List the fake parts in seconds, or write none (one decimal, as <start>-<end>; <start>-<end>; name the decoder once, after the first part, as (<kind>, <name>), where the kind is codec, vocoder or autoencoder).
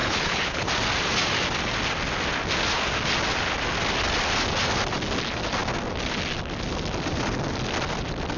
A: 0.0-0.7 (codec, HILCodec)